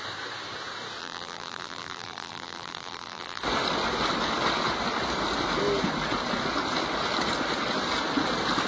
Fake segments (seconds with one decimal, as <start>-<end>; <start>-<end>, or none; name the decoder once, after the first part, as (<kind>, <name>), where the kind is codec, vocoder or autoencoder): 1.0-3.4 (vocoder, BigVGAN v2)